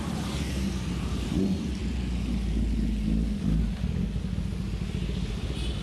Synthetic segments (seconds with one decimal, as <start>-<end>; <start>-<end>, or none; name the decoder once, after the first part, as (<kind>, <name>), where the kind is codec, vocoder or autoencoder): none